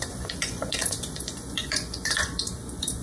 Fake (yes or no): yes